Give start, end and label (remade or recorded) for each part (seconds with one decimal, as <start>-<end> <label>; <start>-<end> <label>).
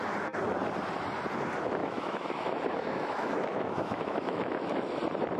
0.0-1.8 recorded; 1.8-5.0 remade; 5.0-5.4 recorded